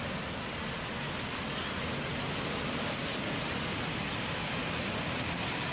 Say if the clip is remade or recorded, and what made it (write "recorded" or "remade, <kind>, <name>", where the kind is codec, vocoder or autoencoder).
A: recorded